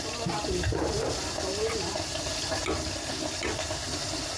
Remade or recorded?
recorded